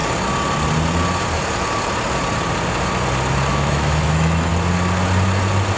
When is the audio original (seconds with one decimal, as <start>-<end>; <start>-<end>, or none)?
0.0-3.5; 4.5-5.8